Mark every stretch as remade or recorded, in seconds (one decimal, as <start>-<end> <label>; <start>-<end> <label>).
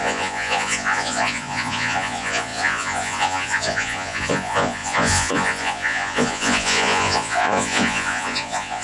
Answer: 0.0-8.8 remade